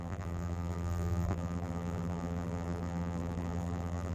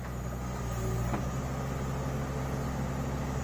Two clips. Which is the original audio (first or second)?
second